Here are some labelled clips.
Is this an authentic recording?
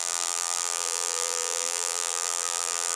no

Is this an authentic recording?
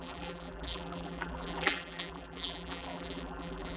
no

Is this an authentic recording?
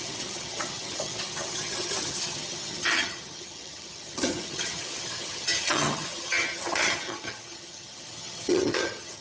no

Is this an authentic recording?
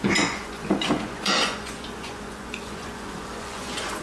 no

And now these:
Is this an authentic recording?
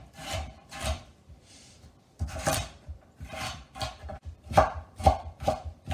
no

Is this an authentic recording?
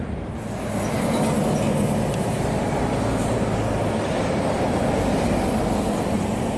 yes